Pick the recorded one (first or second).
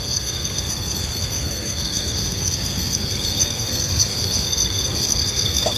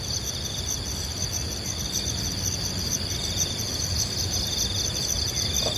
second